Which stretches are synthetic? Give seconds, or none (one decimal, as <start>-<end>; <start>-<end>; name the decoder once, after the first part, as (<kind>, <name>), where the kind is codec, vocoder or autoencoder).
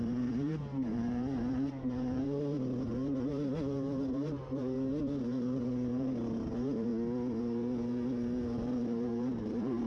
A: 0.0-6.9 (vocoder, BigVGAN v2); 7.4-9.9